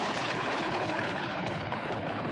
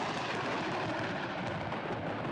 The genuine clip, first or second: second